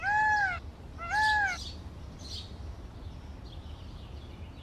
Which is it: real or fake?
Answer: real